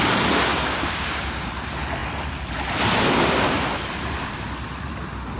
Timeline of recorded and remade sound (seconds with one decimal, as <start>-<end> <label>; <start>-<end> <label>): 0.0-0.5 recorded; 0.5-1.5 remade; 1.5-5.4 recorded